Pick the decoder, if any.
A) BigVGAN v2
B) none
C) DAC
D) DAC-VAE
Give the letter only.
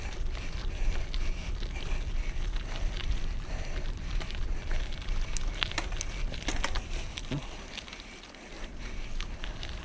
B